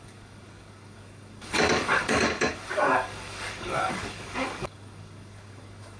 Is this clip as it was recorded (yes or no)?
no